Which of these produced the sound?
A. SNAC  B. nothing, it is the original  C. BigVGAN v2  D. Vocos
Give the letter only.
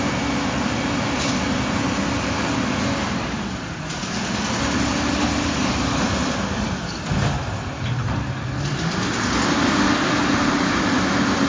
B